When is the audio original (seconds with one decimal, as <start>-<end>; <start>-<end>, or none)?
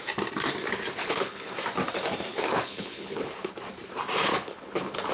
0.0-1.0; 1.5-2.3; 3.5-4.3